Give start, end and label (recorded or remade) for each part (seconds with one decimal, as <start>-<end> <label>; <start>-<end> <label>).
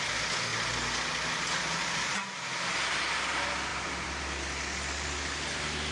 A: 0.0-3.7 recorded; 3.7-4.2 remade; 4.2-5.9 recorded